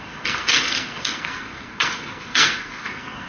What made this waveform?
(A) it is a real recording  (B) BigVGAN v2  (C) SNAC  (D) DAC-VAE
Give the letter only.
C